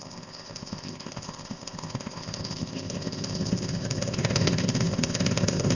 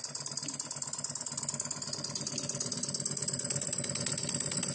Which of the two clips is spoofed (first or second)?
first